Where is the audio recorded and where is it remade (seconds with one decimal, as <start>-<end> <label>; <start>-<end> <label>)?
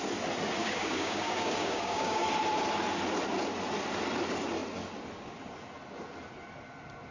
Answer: 0.0-0.6 recorded; 0.6-2.3 remade; 2.3-7.1 recorded